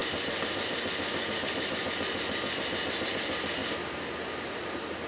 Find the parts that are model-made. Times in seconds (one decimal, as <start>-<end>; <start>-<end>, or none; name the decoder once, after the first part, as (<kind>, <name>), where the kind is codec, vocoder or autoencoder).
none